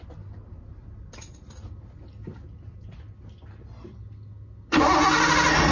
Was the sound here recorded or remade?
recorded